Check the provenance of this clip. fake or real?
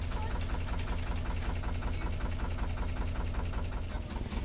real